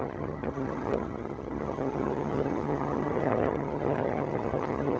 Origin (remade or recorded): remade